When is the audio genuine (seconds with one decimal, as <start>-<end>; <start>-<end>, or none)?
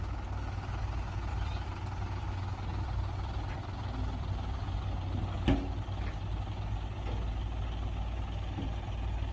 0.0-1.3; 2.2-2.7; 4.6-9.3